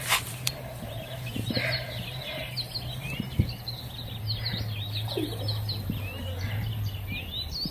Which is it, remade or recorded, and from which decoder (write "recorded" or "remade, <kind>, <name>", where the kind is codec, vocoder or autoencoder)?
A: recorded